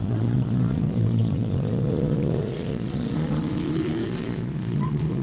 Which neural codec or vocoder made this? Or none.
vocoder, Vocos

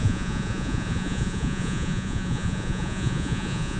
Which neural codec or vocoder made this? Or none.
vocoder, Vocos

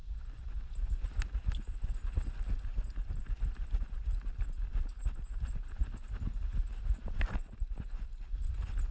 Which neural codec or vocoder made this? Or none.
none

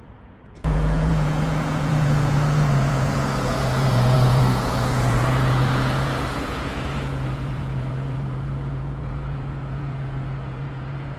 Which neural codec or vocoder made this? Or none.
vocoder, Vocos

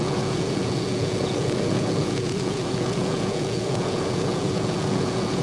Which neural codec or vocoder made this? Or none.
vocoder, Vocos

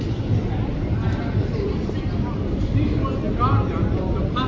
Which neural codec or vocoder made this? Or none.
none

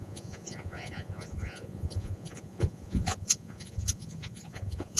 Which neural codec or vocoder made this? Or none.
vocoder, Vocos